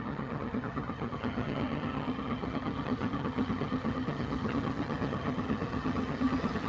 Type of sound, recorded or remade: remade